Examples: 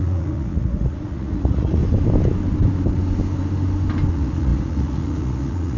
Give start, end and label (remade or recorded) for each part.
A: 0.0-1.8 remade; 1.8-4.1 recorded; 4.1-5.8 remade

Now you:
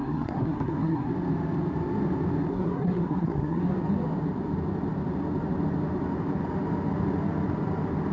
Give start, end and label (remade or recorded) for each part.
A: 0.0-1.1 remade; 1.1-2.5 recorded; 2.5-3.6 remade; 3.6-8.1 recorded

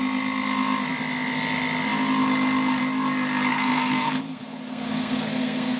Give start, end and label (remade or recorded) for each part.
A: 0.0-3.5 recorded; 3.5-5.8 remade

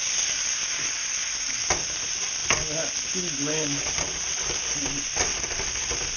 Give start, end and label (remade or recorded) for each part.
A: 0.0-6.2 recorded

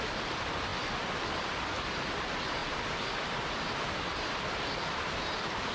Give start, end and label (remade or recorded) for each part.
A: 0.0-5.7 recorded